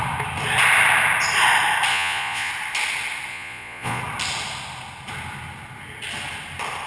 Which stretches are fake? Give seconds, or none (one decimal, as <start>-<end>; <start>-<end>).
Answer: 1.9-2.5; 3.3-4.0